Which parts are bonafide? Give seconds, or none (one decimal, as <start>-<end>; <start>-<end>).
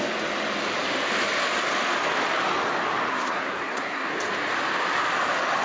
0.0-3.1; 4.1-5.6